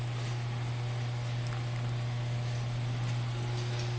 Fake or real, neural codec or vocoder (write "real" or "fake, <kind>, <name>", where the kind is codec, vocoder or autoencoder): real